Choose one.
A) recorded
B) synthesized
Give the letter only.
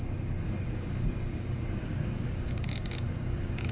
B